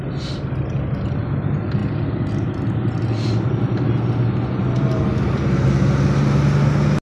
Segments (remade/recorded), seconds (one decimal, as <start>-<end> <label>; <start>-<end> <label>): 0.0-7.0 recorded